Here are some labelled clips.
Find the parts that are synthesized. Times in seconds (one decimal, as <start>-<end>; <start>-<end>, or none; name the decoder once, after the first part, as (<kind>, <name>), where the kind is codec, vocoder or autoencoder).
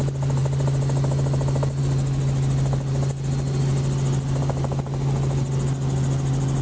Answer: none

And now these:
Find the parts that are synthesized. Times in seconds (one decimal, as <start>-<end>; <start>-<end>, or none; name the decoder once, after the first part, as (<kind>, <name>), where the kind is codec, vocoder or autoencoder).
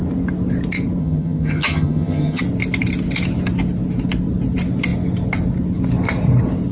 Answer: 1.0-2.4 (vocoder, HiFi-GAN)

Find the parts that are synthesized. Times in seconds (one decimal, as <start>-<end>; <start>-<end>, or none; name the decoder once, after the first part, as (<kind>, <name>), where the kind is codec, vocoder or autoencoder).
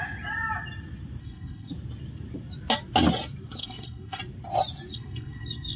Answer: 1.2-1.7 (codec, SNAC); 3.6-4.2; 4.9-5.8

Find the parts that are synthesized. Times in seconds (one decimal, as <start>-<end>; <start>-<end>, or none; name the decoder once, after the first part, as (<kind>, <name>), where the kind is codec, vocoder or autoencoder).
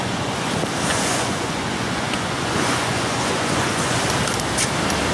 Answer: 0.0-0.5 (vocoder, Vocos); 0.9-4.0